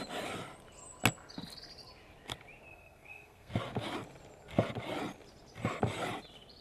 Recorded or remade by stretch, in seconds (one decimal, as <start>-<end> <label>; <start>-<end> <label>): 0.0-2.7 recorded; 2.7-3.5 remade; 3.5-6.6 recorded